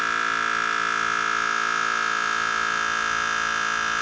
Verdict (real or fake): real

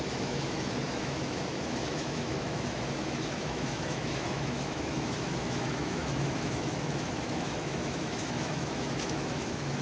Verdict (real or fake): fake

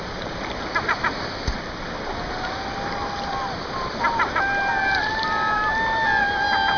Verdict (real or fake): real